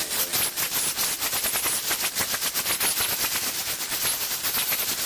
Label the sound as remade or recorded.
recorded